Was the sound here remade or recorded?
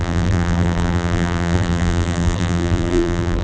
remade